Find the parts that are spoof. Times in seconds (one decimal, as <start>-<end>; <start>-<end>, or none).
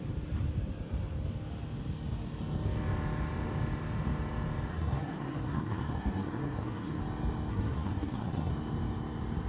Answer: 4.7-7.0; 7.5-8.5